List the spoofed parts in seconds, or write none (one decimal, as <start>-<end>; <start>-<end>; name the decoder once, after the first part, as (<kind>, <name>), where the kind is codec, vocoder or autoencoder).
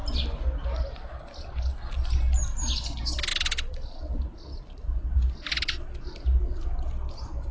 none